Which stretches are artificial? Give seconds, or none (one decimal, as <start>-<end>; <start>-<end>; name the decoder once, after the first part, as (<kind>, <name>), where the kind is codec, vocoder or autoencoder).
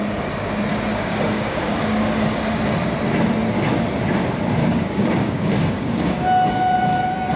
0.9-2.1 (codec, DAC); 4.6-6.5